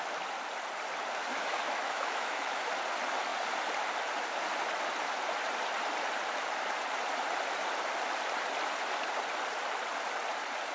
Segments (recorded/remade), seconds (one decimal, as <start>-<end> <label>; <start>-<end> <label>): 0.0-1.2 recorded; 1.2-2.7 remade; 2.7-10.7 recorded